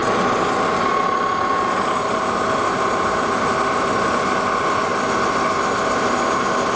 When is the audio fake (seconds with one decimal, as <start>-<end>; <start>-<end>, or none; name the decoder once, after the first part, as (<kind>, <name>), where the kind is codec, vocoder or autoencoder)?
none